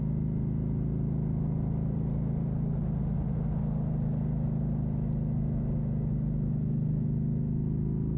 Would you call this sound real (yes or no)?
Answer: yes